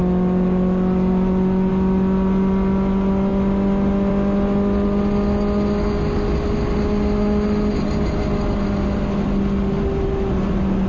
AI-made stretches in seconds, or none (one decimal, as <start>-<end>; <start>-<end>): none